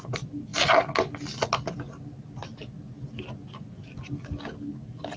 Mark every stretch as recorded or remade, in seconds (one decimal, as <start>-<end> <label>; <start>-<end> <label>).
0.0-5.2 recorded